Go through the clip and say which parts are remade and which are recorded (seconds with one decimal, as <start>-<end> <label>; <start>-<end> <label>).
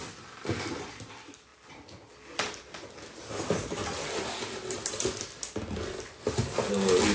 0.0-7.1 recorded